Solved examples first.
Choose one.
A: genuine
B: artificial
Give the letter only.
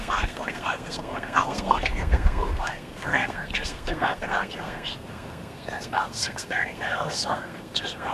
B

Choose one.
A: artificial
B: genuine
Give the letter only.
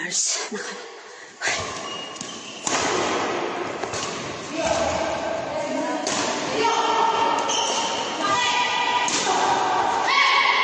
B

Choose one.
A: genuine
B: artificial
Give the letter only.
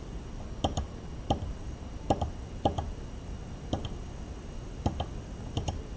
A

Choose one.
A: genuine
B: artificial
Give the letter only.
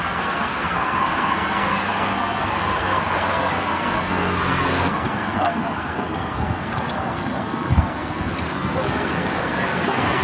B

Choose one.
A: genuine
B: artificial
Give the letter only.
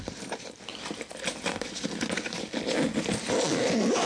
A